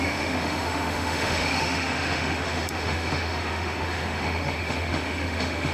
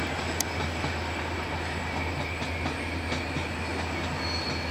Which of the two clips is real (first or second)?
second